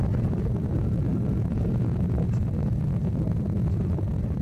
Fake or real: real